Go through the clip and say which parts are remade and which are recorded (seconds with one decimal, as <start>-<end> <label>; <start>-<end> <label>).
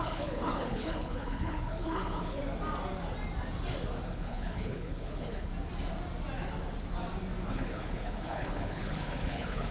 0.0-2.4 remade; 2.4-4.1 recorded; 4.1-5.5 remade; 5.5-7.5 recorded; 7.5-9.7 remade